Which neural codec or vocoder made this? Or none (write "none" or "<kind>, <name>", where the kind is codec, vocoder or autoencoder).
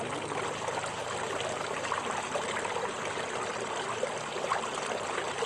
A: none